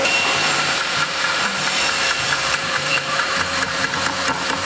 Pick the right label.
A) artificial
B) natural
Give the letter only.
A